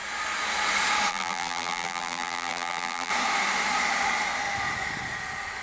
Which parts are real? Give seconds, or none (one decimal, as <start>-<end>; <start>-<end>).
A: 0.0-1.1; 3.1-5.6